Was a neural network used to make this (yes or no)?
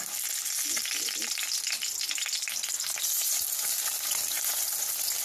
no